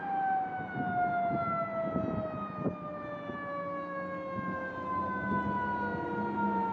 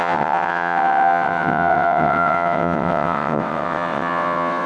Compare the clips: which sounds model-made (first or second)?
second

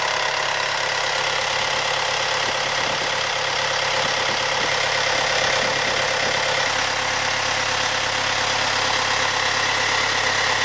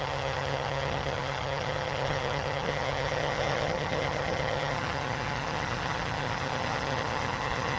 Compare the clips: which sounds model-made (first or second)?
second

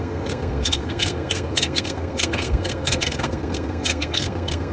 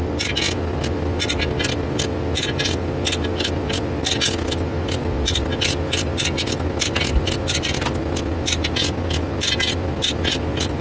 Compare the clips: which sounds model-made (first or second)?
first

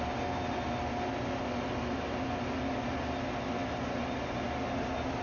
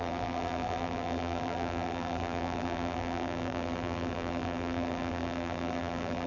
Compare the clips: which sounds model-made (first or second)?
second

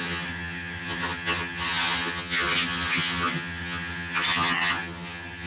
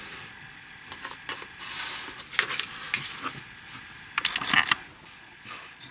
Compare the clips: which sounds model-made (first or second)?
first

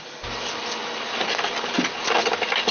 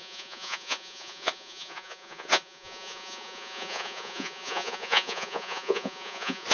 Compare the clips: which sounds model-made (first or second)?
second